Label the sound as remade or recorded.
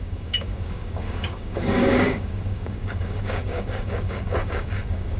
remade